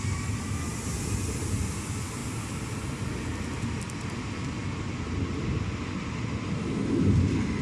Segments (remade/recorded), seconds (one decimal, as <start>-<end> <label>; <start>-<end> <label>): 0.0-7.6 recorded